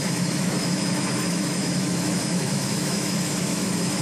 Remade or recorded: remade